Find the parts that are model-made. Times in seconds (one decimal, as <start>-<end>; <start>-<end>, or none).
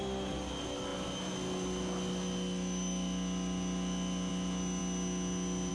none